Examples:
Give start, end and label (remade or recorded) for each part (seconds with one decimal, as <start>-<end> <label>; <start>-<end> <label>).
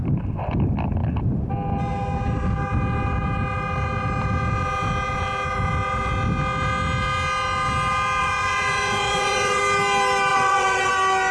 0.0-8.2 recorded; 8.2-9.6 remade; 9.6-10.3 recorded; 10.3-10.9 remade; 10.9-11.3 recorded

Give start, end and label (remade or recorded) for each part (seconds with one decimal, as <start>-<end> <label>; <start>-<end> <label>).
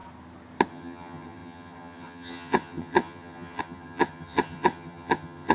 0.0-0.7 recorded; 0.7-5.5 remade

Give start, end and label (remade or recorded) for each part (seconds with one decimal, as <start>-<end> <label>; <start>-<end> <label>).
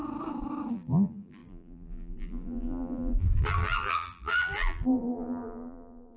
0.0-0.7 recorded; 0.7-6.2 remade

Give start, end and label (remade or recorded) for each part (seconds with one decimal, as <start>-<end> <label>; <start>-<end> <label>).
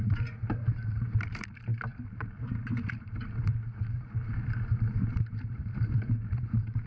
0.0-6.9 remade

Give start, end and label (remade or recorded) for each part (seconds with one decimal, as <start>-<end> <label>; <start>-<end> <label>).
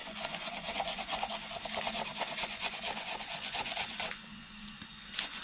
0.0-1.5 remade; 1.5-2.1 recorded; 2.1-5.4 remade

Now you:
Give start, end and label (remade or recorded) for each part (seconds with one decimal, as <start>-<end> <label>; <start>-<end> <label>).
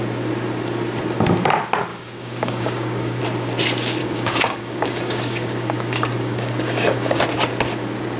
0.0-1.9 recorded; 1.9-3.2 remade; 3.2-4.0 recorded; 4.0-7.2 remade; 7.2-8.2 recorded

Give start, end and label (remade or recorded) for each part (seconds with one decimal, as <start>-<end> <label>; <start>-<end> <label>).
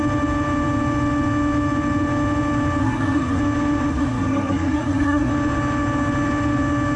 0.0-2.8 recorded; 2.8-3.4 remade; 3.4-3.9 recorded; 3.9-5.3 remade; 5.3-7.0 recorded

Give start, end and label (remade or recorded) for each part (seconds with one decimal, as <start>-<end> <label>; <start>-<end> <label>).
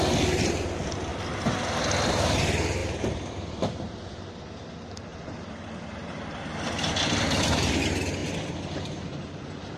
0.0-2.8 recorded; 2.8-4.3 remade; 4.3-5.1 recorded; 5.1-6.4 remade; 6.4-8.2 recorded; 8.2-9.8 remade